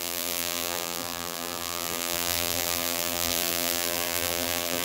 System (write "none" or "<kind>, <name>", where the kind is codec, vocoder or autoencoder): vocoder, BigVGAN v2